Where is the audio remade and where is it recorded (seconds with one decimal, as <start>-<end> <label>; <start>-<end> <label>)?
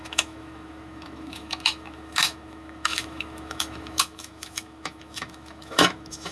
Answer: 0.0-6.3 remade